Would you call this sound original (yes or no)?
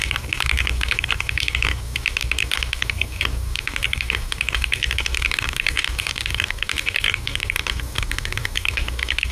no